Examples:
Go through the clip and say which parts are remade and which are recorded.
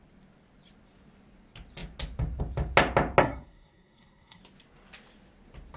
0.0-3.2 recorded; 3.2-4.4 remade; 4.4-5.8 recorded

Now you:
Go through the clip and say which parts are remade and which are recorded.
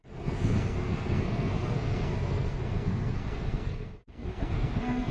0.0-5.1 remade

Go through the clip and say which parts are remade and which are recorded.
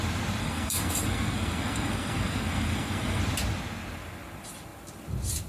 0.0-0.4 recorded; 0.4-3.2 remade; 3.2-5.5 recorded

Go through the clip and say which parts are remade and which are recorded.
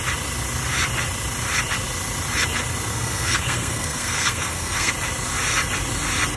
0.0-2.9 recorded; 2.9-4.9 remade; 4.9-6.4 recorded